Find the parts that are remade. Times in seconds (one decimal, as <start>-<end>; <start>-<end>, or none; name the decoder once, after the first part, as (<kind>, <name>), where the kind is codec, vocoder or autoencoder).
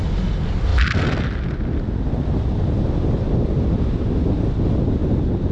none